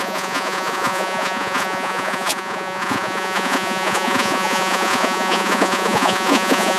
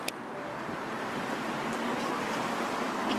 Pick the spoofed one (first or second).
first